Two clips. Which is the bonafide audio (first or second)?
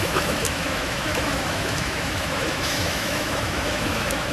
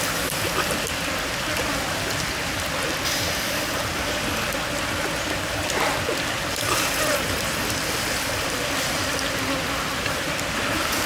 second